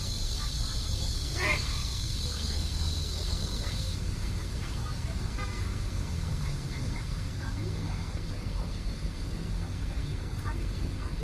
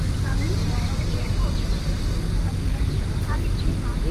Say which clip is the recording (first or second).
second